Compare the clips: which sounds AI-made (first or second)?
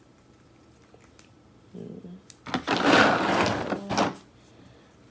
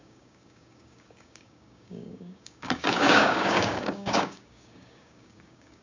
second